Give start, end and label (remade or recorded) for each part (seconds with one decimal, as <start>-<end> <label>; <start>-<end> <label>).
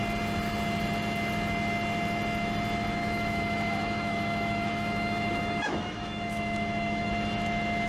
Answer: 0.0-3.0 recorded; 3.0-7.1 remade; 7.1-7.9 recorded